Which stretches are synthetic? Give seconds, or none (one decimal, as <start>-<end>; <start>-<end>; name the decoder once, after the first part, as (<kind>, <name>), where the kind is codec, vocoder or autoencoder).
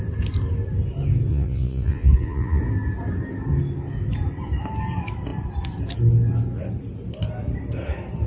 1.3-2.6 (vocoder, Vocos)